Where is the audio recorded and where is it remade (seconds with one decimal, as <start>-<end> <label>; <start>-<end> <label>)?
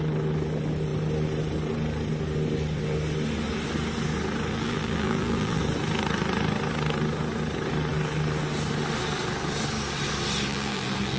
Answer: 0.0-4.5 recorded; 4.5-5.6 remade; 5.6-10.5 recorded; 10.5-11.2 remade